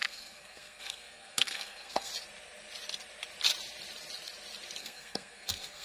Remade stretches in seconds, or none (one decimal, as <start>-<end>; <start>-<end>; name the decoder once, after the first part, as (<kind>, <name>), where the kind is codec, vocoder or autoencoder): 0.0-2.1 (codec, SNAC); 4.8-5.8